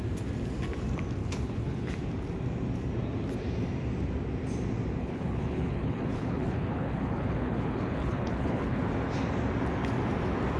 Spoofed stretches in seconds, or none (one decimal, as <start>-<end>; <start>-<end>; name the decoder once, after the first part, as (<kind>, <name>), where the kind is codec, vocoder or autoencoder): 1.2-1.9 (codec, HILCodec); 5.0-8.8